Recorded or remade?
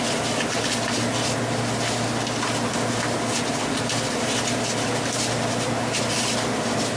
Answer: recorded